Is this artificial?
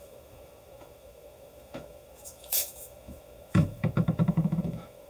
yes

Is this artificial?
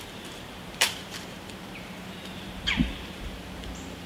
yes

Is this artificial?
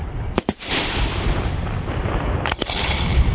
yes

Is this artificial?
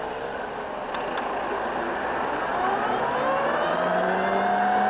no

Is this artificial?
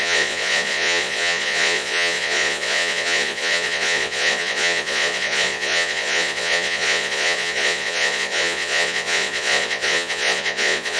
yes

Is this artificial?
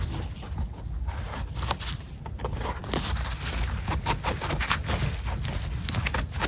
no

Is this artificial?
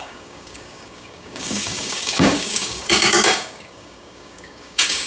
yes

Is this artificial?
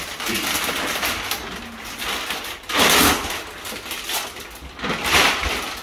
no